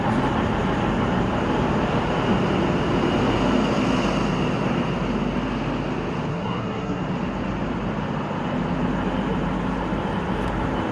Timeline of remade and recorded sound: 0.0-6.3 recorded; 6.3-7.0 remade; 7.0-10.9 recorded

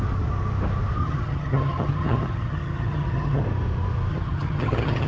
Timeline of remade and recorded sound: 0.0-1.0 recorded; 1.0-3.4 remade; 3.4-4.1 recorded; 4.1-5.1 remade

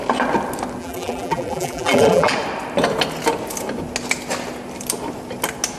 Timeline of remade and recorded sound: 0.0-0.8 recorded; 0.8-2.3 remade; 2.3-5.8 recorded